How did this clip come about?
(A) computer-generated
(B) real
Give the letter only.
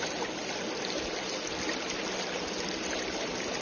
B